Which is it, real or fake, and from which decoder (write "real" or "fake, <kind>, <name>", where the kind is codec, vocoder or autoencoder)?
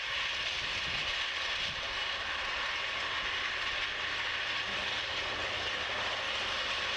real